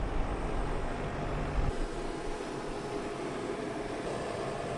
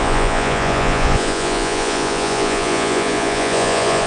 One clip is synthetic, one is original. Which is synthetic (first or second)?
second